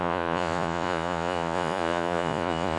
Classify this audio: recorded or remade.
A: remade